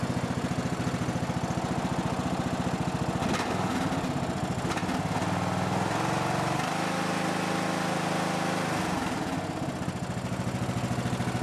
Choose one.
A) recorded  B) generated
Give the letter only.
A